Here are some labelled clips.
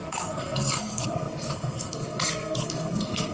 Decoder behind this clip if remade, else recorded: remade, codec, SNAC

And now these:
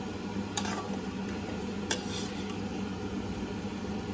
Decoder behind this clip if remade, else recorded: recorded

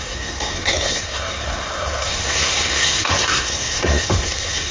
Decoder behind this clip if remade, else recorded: remade, codec, SNAC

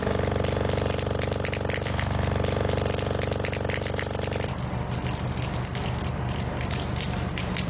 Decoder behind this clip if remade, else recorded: recorded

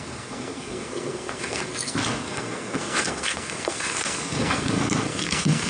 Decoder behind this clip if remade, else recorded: remade, codec, SNAC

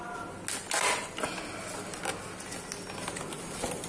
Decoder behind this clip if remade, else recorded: recorded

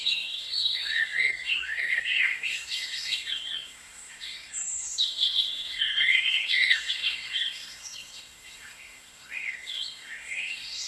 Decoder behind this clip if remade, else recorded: remade, codec, SNAC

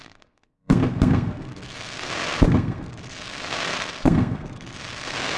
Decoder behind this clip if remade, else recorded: remade, codec, SNAC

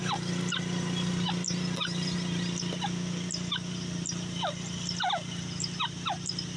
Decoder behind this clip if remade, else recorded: recorded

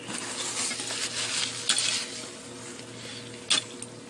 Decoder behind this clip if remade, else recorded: recorded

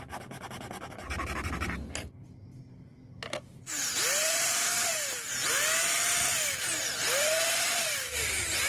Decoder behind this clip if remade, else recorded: recorded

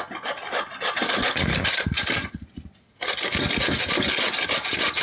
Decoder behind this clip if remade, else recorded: recorded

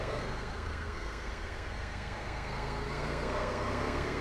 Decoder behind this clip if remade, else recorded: remade, codec, SNAC